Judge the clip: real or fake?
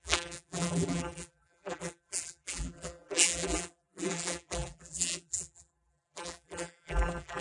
fake